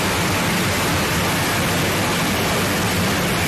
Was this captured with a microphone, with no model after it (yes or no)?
yes